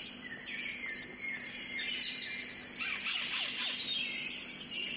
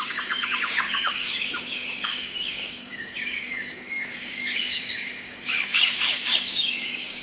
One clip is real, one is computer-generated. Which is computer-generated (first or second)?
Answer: second